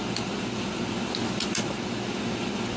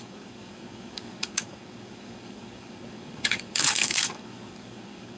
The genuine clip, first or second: first